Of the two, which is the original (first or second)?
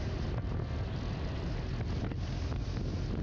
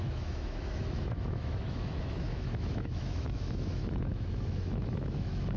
first